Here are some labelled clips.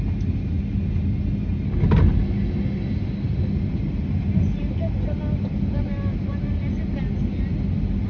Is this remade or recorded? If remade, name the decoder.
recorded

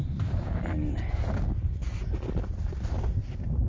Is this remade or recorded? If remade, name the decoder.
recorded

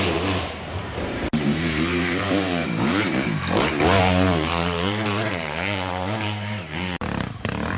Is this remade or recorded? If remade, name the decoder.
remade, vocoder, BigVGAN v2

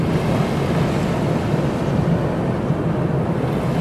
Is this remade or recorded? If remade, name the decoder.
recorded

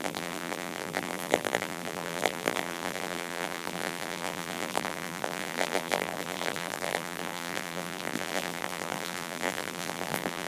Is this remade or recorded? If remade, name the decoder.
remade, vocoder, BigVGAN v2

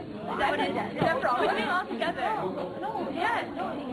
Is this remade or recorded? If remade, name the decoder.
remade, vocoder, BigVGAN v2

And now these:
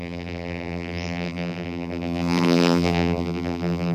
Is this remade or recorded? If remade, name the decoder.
remade, vocoder, BigVGAN v2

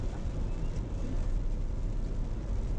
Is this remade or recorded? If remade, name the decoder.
recorded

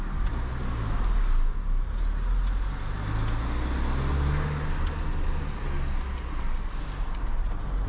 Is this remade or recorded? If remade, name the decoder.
recorded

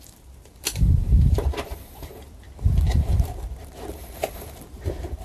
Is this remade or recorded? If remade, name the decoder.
remade, vocoder, BigVGAN v2